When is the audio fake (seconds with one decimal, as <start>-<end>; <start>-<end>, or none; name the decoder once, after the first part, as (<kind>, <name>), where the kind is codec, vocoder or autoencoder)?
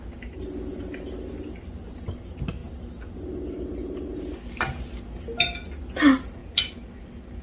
none